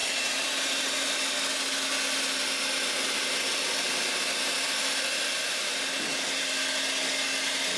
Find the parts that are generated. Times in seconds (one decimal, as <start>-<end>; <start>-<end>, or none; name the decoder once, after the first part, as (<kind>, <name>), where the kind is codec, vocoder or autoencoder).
none